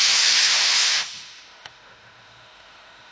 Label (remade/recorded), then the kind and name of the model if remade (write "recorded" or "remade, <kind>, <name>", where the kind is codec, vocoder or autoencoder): remade, autoencoder, DAC-VAE